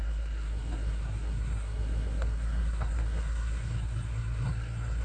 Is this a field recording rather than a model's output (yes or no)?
no